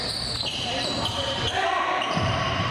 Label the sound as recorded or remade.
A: remade